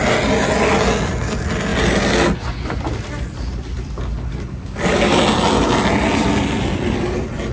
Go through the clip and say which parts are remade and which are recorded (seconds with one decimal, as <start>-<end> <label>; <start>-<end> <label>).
0.0-4.5 recorded; 4.5-5.2 remade; 5.2-7.5 recorded